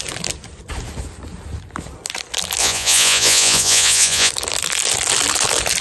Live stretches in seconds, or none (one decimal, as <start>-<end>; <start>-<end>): 0.0-2.6; 4.3-5.8